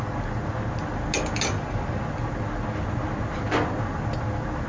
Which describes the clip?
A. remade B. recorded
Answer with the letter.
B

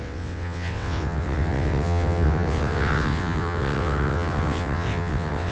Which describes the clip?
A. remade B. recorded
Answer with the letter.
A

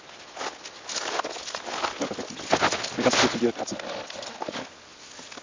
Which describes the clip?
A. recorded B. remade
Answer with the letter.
A